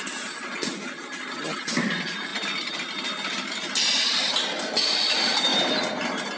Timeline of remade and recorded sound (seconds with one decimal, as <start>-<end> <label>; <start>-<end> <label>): 0.0-6.4 recorded